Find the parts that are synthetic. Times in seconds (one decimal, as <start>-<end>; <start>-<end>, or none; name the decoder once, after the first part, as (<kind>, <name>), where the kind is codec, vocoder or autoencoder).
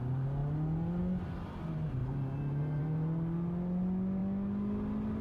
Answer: none